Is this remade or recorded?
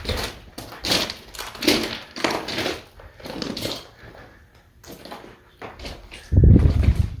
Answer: recorded